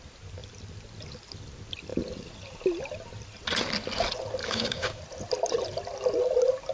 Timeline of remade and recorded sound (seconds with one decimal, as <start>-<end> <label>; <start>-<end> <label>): 0.0-4.4 recorded; 4.4-5.0 remade; 5.0-6.7 recorded